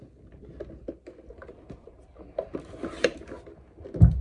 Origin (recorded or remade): recorded